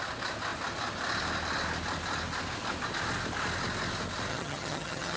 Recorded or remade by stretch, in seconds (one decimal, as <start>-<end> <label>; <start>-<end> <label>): 0.0-4.3 recorded; 4.3-5.2 remade